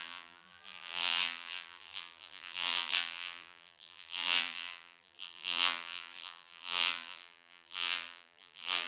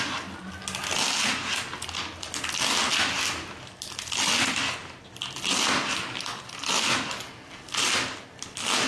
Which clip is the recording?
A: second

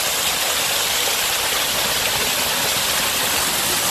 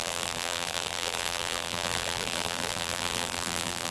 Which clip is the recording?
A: first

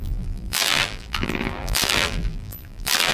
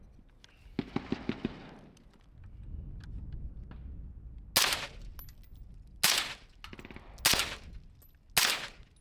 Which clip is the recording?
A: second